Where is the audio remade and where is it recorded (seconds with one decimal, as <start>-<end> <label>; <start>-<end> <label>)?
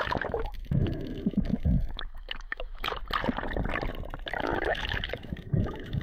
0.0-3.0 remade; 3.0-4.4 recorded; 4.4-6.0 remade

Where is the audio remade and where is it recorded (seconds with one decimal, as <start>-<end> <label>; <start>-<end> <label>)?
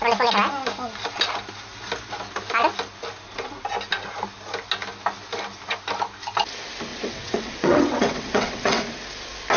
0.0-6.9 recorded; 6.9-8.8 remade; 8.8-9.6 recorded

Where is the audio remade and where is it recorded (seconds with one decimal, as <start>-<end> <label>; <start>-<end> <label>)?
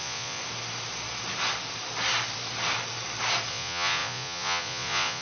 0.0-0.4 remade; 0.4-3.5 recorded; 3.5-5.2 remade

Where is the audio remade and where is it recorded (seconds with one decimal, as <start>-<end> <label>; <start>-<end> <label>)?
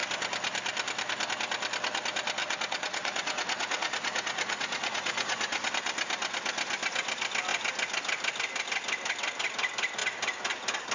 0.0-2.4 recorded; 2.4-5.7 remade; 5.7-10.9 recorded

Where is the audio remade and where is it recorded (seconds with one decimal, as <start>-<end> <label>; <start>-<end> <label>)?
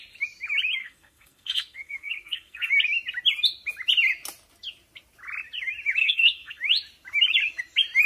0.0-0.8 recorded; 0.8-2.7 remade; 2.7-6.0 recorded; 6.0-6.6 remade; 6.6-8.1 recorded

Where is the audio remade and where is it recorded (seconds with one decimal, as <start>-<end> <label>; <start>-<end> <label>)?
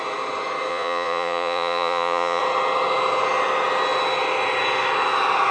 0.0-0.7 recorded; 0.7-2.4 remade; 2.4-5.5 recorded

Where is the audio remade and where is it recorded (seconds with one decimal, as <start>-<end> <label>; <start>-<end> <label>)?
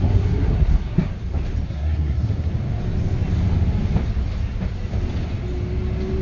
0.0-1.1 remade; 1.1-1.7 recorded; 1.7-2.5 remade; 2.5-6.2 recorded